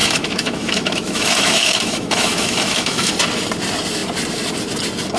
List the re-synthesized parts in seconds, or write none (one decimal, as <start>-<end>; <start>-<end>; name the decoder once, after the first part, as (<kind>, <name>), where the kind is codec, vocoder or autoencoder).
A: 0.0-3.1 (autoencoder, DAC-VAE)